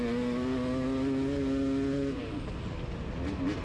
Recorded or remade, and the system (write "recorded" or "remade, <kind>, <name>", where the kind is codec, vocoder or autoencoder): recorded